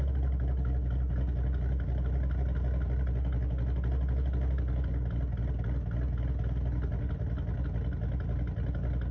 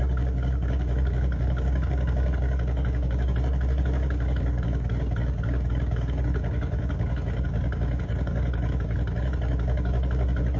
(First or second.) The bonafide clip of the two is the first